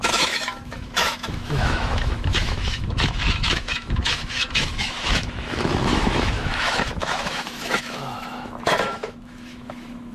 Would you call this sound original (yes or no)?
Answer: no